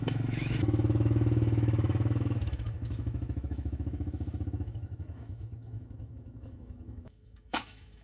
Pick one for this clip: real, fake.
fake